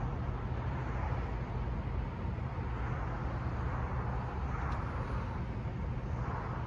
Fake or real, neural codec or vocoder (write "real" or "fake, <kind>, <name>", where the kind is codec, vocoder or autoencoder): real